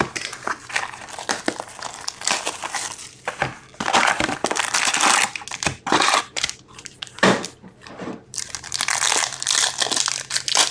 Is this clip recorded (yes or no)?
yes